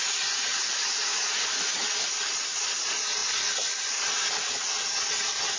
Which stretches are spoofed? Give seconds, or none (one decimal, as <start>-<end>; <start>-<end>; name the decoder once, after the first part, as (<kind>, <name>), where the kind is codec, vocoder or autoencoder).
0.5-1.0 (vocoder, BigVGAN v2); 1.8-2.4